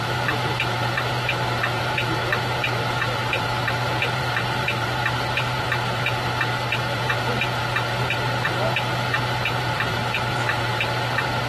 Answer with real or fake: fake